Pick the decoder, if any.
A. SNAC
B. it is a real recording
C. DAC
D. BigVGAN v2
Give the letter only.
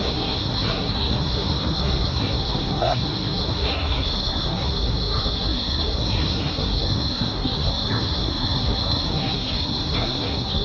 A